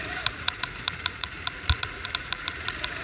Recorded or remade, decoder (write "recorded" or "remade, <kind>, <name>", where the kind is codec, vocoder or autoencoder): remade, vocoder, Vocos